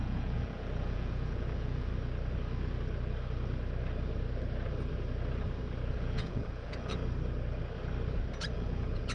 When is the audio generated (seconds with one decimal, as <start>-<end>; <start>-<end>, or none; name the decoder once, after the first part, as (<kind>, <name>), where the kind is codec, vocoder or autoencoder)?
0.0-1.9 (vocoder, Vocos); 5.9-7.0; 8.5-9.1